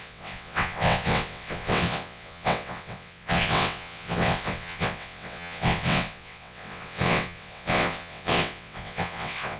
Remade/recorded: remade